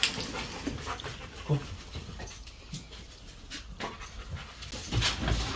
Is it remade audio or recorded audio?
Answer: recorded